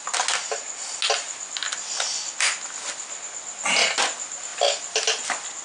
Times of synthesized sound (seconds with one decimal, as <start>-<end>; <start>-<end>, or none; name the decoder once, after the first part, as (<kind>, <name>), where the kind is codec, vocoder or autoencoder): none

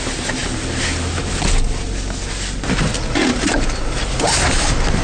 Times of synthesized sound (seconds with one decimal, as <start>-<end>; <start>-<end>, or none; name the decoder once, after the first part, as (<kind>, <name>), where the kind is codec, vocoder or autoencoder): none

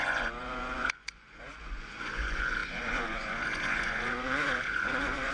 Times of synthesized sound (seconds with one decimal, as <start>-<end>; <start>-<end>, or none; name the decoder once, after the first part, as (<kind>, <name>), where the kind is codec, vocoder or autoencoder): 0.0-5.3 (vocoder, Vocos)

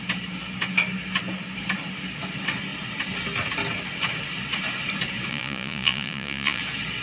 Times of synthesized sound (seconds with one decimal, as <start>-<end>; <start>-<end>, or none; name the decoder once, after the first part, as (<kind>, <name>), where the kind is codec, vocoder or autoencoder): 5.3-6.6 (vocoder, Vocos)